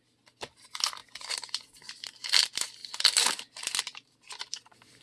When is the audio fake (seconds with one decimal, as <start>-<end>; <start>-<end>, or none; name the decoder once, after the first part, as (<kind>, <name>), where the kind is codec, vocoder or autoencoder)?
none